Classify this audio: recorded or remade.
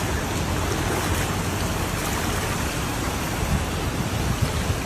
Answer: recorded